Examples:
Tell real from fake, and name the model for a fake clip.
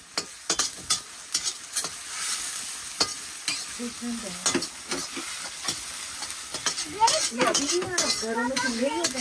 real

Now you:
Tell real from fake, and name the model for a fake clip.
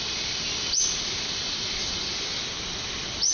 real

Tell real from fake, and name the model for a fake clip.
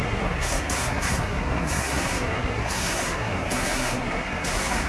fake, codec, SNAC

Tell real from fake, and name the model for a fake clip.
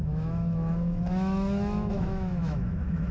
fake, autoencoder, DAC-VAE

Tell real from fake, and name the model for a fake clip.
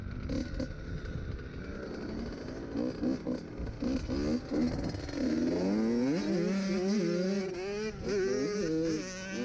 real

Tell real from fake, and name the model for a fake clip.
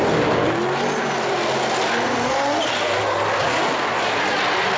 real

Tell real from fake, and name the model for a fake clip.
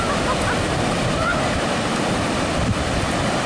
real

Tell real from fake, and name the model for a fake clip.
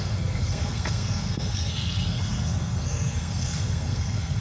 fake, codec, SNAC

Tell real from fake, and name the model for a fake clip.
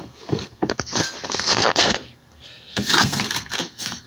fake, codec, SNAC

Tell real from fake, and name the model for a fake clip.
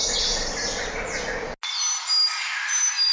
real